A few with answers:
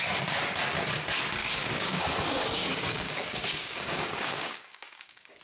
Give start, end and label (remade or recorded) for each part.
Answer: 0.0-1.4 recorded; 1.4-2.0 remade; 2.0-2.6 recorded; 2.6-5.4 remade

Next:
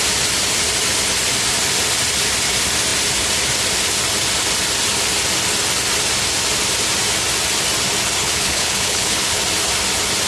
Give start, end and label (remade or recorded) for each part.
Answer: 0.0-8.2 recorded; 8.2-9.4 remade; 9.4-10.3 recorded

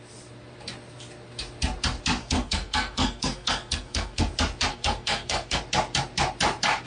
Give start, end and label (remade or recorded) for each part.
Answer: 0.0-2.2 recorded; 2.2-4.2 remade; 4.2-4.7 recorded; 4.7-5.6 remade; 5.6-6.9 recorded

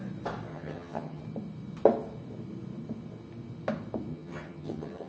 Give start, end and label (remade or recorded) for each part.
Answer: 0.0-0.5 recorded; 0.5-1.2 remade; 1.2-4.1 recorded; 4.1-5.1 remade